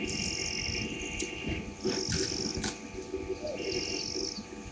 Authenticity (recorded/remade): recorded